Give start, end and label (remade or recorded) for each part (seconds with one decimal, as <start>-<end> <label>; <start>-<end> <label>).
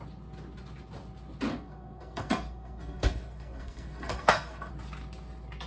0.0-1.5 recorded; 1.5-4.7 remade; 4.7-5.7 recorded